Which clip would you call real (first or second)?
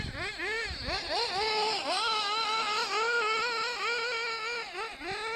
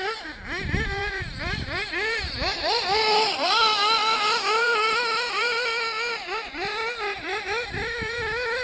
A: first